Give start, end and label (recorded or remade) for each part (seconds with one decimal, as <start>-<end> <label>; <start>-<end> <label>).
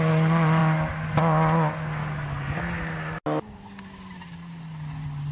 0.0-5.3 recorded